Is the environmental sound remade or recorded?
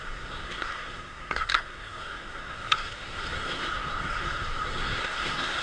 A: remade